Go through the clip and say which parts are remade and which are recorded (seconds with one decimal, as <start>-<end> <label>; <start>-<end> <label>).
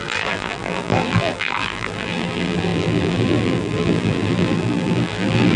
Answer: 0.0-5.6 remade